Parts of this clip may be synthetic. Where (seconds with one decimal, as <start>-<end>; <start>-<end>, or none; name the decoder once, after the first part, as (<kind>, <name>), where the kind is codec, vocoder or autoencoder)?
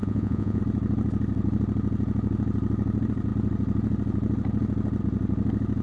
0.0-0.6 (vocoder, Vocos)